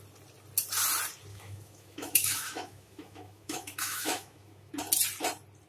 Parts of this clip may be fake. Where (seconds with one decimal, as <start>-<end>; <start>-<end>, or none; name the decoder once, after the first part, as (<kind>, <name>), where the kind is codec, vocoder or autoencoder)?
1.3-4.7 (autoencoder, DAC-VAE)